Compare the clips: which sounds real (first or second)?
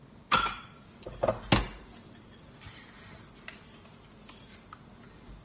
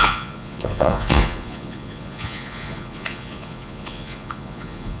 first